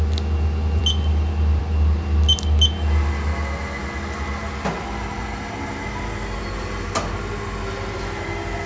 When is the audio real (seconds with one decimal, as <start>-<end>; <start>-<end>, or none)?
0.0-8.7